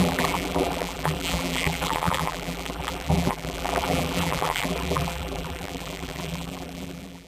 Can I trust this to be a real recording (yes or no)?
no